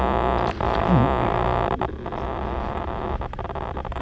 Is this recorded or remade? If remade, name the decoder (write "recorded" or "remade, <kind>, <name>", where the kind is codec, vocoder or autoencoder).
recorded